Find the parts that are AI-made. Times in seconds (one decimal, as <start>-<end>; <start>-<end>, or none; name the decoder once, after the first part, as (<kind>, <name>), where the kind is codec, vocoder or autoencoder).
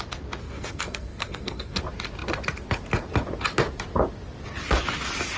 0.4-1.8 (codec, SNAC)